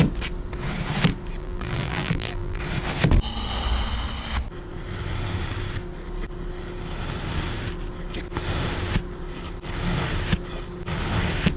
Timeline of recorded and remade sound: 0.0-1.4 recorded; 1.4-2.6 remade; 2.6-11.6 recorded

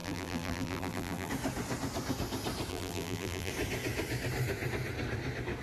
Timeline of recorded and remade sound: 0.0-1.3 remade; 1.3-2.7 recorded; 2.7-3.5 remade; 3.5-5.6 recorded